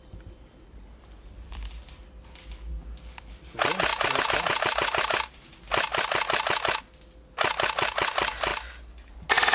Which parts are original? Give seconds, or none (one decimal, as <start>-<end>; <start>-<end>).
0.0-3.9; 5.6-9.5